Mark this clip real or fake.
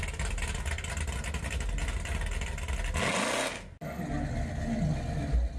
real